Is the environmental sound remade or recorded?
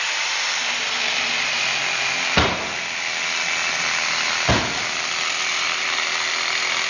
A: recorded